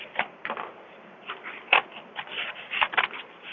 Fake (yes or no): no